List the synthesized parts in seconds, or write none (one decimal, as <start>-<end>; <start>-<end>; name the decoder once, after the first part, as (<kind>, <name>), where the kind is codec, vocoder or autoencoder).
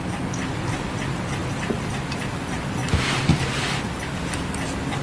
none